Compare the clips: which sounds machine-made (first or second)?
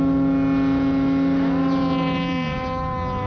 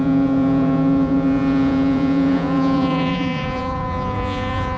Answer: second